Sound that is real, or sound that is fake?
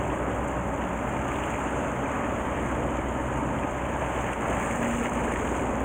real